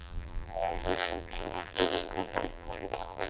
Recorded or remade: remade